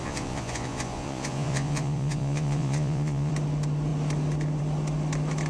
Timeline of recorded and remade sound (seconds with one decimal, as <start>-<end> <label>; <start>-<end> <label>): 0.0-3.3 remade; 3.3-5.5 recorded